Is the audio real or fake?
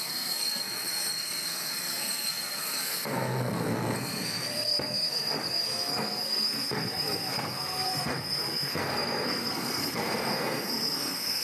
fake